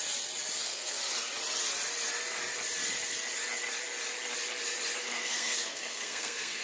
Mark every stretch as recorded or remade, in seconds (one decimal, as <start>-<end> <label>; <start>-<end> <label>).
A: 0.0-0.6 recorded; 0.6-1.0 remade; 1.0-5.0 recorded; 5.0-6.6 remade